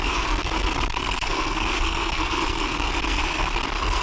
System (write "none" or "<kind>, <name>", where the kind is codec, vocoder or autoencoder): codec, SNAC